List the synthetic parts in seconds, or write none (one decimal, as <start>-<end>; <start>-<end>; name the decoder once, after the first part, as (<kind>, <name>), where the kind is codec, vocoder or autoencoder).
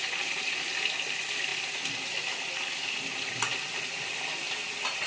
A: none